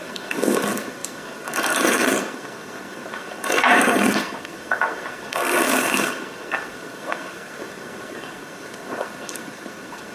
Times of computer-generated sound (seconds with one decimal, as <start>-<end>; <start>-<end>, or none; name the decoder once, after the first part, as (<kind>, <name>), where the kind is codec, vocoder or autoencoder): 0.0-10.1 (codec, SNAC)